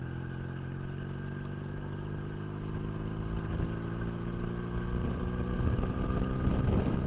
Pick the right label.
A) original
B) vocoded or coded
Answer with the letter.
A